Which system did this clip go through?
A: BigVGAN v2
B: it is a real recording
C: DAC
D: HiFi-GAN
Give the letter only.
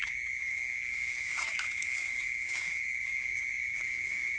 C